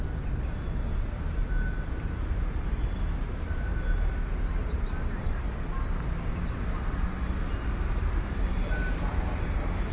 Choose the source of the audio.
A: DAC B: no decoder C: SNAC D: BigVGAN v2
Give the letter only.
B